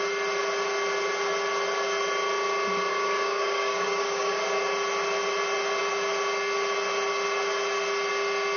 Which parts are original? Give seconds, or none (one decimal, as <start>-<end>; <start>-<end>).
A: 0.0-2.9; 4.4-8.6

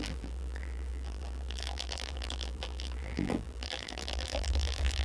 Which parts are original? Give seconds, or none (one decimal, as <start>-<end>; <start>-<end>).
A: none

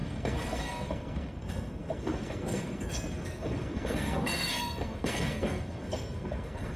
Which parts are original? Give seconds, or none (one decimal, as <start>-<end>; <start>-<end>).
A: none

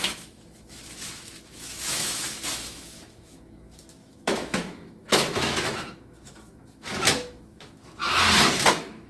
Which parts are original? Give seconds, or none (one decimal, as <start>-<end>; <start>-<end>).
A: 8.0-8.7

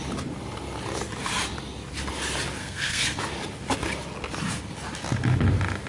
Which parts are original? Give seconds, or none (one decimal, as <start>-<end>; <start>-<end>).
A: 0.0-2.6; 3.2-5.9

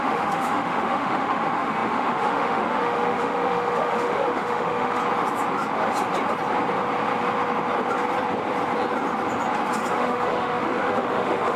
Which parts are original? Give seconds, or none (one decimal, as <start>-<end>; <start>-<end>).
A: 5.0-9.9

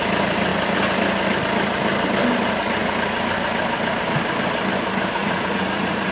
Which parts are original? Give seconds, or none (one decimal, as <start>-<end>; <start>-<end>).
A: 0.0-5.2

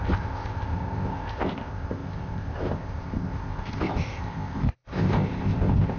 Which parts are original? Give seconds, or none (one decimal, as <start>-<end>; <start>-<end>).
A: none